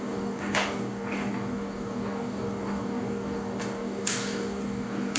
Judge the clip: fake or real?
fake